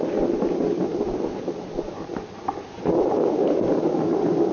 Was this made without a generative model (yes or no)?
no